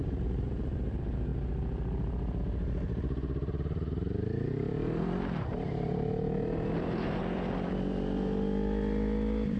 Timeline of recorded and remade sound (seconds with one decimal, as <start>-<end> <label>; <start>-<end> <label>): 0.0-1.3 remade; 1.3-2.4 recorded; 2.4-9.6 remade